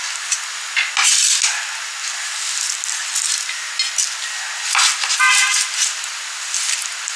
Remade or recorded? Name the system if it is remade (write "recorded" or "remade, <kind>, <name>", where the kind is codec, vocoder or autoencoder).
recorded